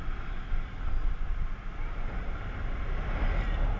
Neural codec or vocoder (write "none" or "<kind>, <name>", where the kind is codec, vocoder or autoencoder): none